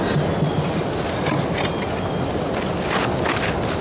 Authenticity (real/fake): real